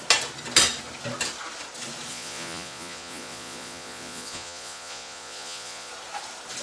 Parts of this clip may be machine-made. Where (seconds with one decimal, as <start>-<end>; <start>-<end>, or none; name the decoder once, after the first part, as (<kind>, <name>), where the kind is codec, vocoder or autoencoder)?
2.1-5.9 (vocoder, Vocos)